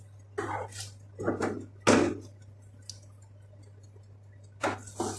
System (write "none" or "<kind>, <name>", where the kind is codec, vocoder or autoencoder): none